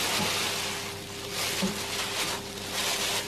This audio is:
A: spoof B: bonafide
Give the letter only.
B